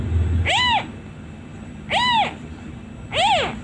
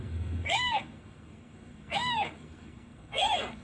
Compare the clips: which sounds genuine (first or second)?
first